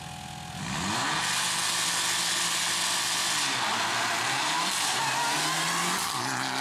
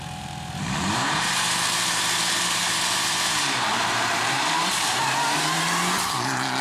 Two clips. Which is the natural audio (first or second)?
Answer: first